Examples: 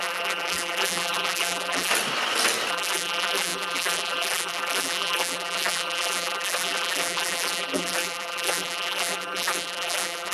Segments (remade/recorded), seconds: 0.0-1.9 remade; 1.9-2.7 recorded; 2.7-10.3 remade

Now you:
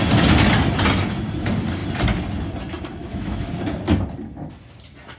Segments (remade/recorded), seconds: 0.0-3.0 recorded; 3.0-3.5 remade; 3.5-5.2 recorded